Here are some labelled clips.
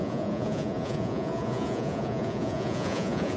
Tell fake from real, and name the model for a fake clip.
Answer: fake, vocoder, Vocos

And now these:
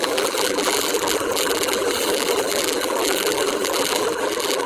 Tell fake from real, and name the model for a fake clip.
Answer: fake, vocoder, BigVGAN v2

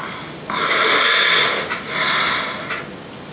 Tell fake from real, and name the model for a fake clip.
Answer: real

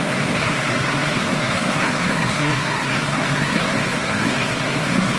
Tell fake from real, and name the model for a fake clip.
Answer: fake, codec, SNAC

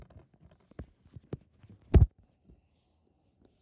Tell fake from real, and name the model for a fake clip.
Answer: real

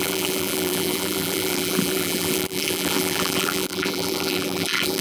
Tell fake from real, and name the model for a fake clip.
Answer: fake, vocoder, BigVGAN v2